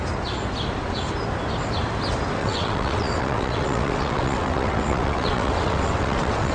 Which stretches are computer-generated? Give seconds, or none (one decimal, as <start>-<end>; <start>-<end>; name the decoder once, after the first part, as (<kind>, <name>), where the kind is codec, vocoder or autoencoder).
2.4-6.5 (vocoder, WaveNeXt)